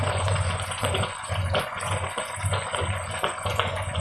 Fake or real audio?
fake